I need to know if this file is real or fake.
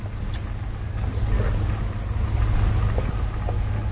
real